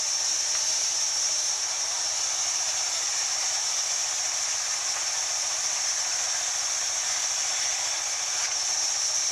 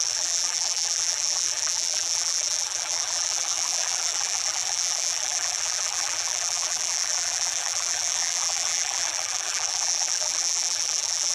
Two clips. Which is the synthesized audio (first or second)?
second